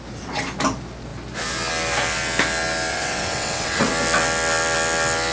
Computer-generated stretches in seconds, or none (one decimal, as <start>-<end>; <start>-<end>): 2.9-3.9